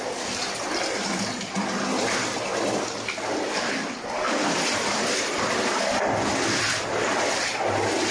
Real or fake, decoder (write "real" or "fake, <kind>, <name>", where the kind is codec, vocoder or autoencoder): real